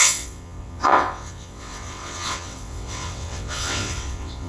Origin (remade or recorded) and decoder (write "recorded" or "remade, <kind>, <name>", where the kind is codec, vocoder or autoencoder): remade, vocoder, WaveNeXt